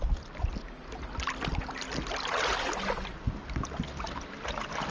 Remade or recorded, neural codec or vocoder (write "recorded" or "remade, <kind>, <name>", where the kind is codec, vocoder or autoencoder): recorded